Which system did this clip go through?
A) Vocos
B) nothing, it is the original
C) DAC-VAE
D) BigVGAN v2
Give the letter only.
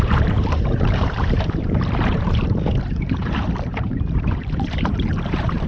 D